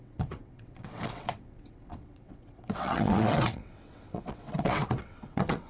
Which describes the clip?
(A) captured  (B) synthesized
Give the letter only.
B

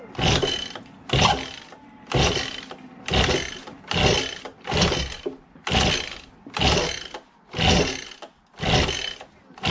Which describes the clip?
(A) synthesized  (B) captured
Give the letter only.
B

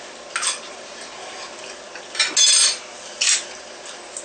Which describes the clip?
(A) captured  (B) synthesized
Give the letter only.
A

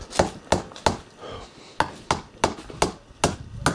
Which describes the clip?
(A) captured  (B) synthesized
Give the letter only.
A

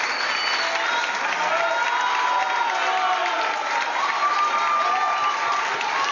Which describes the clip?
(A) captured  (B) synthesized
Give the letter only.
A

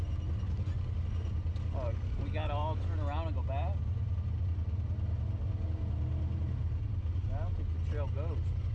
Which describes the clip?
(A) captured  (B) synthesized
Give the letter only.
A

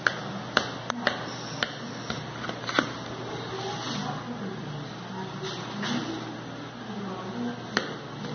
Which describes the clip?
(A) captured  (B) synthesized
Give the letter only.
A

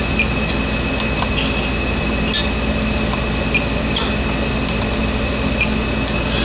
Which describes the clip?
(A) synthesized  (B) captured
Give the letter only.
B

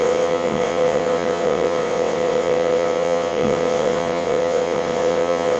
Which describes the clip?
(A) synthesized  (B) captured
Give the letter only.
A